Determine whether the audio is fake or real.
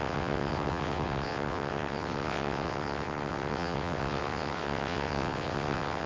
fake